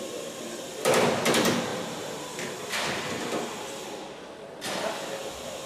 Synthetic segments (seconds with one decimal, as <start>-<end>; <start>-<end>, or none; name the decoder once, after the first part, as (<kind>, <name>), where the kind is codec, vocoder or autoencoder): none